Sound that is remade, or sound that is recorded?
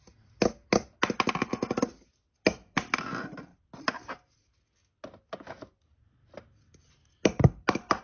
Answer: recorded